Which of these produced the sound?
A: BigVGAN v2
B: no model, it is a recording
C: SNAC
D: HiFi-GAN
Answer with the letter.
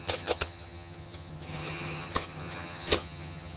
D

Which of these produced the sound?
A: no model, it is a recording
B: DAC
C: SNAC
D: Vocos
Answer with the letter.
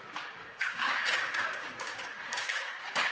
B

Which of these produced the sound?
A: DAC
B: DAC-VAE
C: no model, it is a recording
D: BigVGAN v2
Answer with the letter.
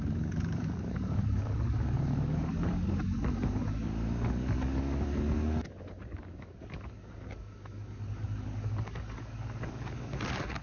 A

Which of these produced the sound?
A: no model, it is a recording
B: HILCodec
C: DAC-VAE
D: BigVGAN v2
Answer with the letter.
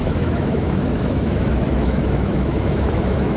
C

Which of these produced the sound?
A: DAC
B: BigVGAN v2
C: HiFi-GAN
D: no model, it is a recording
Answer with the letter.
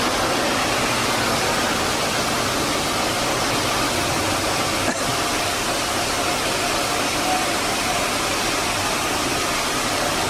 D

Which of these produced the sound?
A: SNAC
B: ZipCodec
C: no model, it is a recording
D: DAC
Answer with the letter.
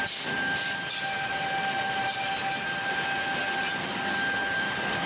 C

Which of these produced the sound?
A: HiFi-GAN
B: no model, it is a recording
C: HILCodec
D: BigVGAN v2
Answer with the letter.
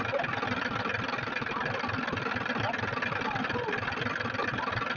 B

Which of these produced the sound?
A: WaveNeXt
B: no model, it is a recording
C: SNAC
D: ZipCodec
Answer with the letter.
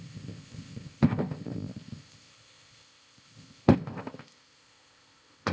D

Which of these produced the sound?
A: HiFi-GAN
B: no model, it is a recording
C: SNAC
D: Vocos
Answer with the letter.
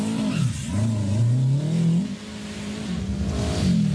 B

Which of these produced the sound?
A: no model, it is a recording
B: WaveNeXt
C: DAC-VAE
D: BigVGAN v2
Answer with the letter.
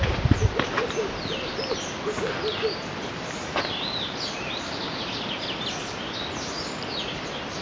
A